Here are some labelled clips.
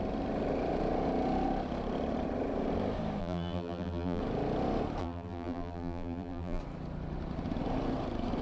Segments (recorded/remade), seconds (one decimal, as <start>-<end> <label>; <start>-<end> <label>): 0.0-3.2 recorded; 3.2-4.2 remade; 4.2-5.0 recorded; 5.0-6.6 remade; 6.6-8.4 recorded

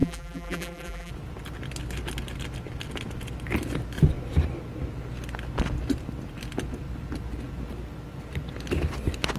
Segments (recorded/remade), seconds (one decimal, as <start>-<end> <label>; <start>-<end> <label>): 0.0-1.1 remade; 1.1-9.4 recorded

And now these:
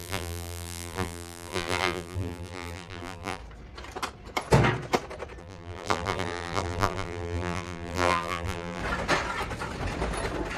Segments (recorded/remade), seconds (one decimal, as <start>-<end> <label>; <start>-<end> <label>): 0.0-3.4 remade; 3.4-5.4 recorded; 5.4-8.8 remade; 8.8-10.6 recorded

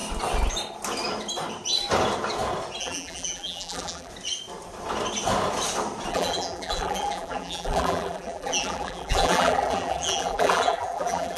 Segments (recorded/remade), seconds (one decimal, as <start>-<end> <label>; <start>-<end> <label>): 0.0-2.8 recorded; 2.8-4.1 remade; 4.1-6.1 recorded; 6.1-11.4 remade

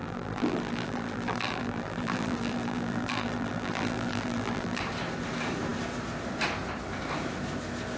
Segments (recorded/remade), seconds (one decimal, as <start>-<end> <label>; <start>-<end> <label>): 0.0-4.8 remade; 4.8-8.0 recorded